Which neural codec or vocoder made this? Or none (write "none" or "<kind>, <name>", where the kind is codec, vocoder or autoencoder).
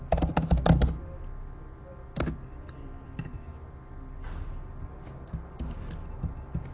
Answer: none